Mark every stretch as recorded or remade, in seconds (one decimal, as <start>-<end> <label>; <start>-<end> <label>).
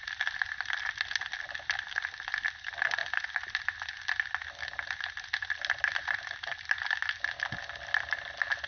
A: 0.0-8.7 recorded